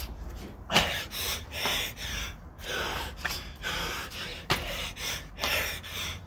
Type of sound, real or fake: fake